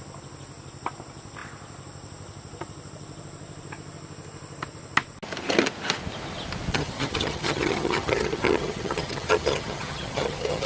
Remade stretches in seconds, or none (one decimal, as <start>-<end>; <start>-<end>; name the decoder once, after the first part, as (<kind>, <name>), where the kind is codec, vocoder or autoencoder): 6.7-10.7 (vocoder, HiFi-GAN)